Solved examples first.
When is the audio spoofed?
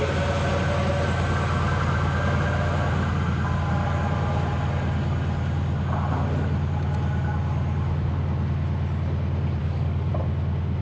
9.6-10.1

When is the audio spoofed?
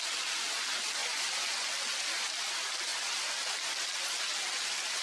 1.0-1.7